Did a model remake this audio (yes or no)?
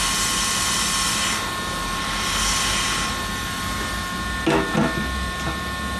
no